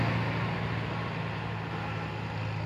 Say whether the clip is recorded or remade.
remade